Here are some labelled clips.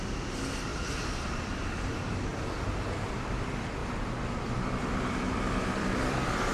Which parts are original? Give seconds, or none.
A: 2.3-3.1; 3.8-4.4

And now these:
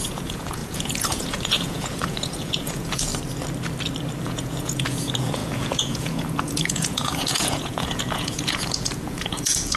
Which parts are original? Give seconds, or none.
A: 3.1-4.2

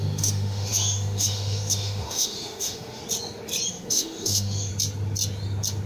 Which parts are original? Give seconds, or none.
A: 3.0-3.7; 4.7-5.9

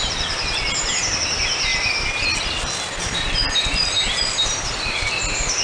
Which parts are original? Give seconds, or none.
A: 0.0-5.6

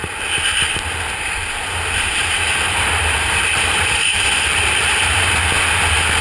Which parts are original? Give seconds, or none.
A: 0.0-2.2; 5.3-6.2

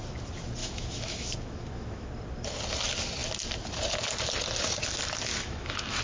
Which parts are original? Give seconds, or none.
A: 0.0-0.6; 2.1-5.3

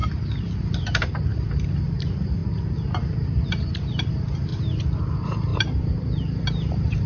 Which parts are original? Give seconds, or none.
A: 2.4-3.5; 4.5-5.0